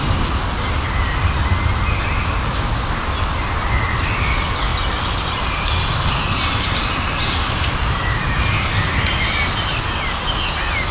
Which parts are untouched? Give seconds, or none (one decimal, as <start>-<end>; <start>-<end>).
0.0-10.9